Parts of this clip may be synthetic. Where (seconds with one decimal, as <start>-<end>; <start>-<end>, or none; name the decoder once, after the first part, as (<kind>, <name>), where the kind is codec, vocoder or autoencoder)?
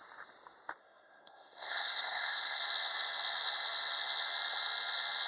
0.8-2.6 (codec, SNAC)